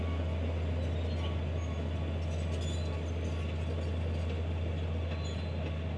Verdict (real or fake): real